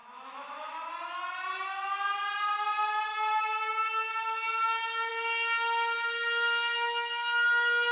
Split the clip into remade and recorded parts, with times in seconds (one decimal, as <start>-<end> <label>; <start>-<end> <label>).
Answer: 0.0-0.9 remade; 0.9-3.1 recorded; 3.1-4.1 remade; 4.1-7.9 recorded

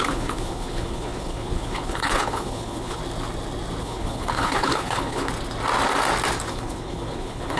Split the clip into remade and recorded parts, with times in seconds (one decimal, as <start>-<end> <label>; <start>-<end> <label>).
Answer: 0.0-3.0 remade; 3.0-3.8 recorded; 3.8-5.3 remade; 5.3-6.5 recorded; 6.5-7.6 remade

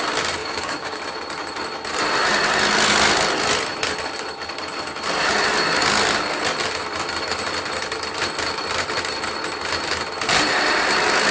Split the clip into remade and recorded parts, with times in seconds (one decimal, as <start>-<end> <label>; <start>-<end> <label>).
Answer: 0.0-0.4 recorded; 0.4-1.0 remade; 1.0-11.3 recorded

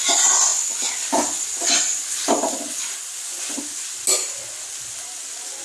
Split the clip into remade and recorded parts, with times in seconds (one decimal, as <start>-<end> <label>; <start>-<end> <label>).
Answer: 0.0-5.6 recorded

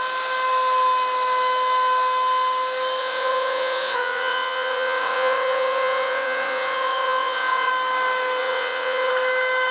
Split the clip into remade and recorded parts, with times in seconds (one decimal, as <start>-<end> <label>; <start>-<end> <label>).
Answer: 0.0-3.0 recorded; 3.0-7.7 remade; 7.7-8.4 recorded; 8.4-9.1 remade; 9.1-9.7 recorded